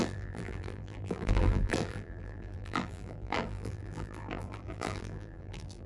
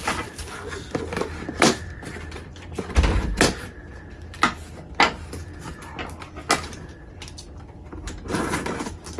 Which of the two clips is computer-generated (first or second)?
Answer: first